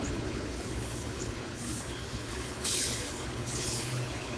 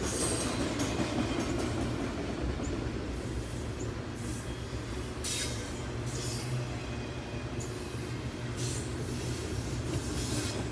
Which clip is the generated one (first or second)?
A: first